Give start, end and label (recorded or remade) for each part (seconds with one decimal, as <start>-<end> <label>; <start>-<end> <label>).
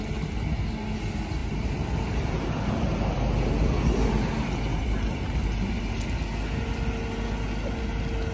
0.0-1.4 recorded; 1.4-2.3 remade; 2.3-4.7 recorded; 4.7-5.8 remade; 5.8-8.3 recorded